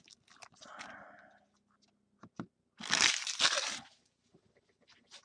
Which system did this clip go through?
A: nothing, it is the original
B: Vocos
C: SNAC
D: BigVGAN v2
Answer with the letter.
A